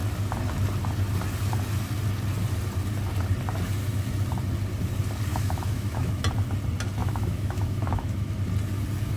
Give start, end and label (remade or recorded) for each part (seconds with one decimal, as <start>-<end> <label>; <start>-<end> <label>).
0.0-5.3 recorded; 5.3-6.1 remade; 6.1-7.0 recorded; 7.0-8.4 remade; 8.4-9.2 recorded